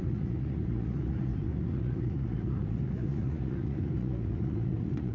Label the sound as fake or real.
fake